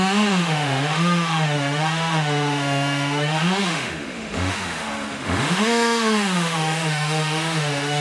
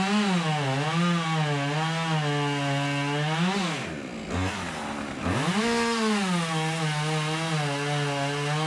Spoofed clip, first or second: first